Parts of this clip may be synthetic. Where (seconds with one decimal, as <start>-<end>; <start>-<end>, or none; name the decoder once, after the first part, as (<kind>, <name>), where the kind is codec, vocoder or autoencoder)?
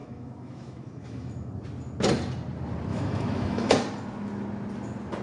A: 0.0-1.5 (autoencoder, DAC-VAE); 2.9-3.7